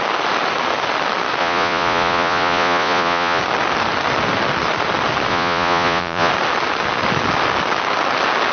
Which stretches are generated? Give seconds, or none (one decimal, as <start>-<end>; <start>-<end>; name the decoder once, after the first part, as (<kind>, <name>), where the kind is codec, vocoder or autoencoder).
1.4-3.4 (vocoder, Vocos); 5.3-6.3